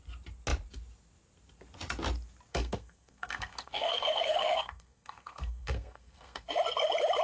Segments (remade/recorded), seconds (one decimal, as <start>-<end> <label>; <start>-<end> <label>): 0.0-2.5 recorded; 2.5-6.5 remade; 6.5-7.2 recorded